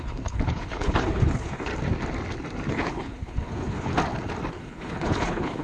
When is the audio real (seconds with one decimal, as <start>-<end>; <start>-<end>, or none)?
1.7-2.7; 3.9-4.5